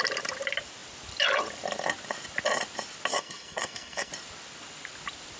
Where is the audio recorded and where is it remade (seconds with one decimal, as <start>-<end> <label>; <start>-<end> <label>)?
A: 0.0-3.1 recorded; 3.1-4.1 remade; 4.1-5.4 recorded